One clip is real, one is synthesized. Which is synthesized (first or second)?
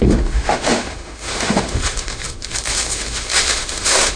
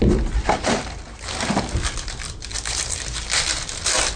first